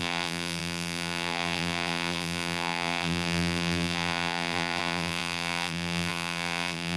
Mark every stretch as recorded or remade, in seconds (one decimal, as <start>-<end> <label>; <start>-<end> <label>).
0.0-7.0 remade